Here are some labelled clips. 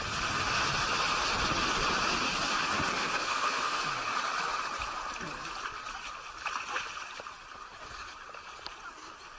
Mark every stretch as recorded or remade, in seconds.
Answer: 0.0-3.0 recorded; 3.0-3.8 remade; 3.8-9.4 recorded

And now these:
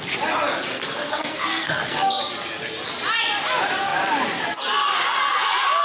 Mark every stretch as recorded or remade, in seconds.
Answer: 0.0-0.7 recorded; 0.7-2.2 remade; 2.2-5.8 recorded

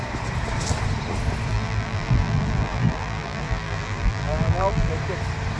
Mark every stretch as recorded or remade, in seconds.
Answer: 0.0-1.5 recorded; 1.5-4.9 remade; 4.9-5.6 recorded

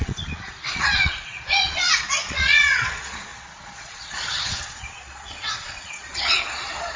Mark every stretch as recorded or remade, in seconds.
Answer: 0.0-7.0 remade

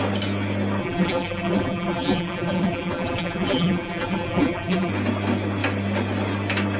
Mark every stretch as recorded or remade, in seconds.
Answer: 0.0-0.8 recorded; 0.8-4.9 remade; 4.9-6.8 recorded

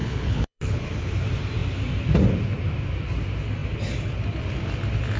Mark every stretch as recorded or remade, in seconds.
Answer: 0.0-1.1 remade; 1.1-5.2 recorded

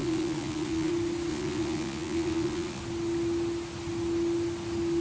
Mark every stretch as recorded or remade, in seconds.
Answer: 0.0-0.9 remade; 0.9-1.3 recorded; 1.3-2.8 remade; 2.8-5.0 recorded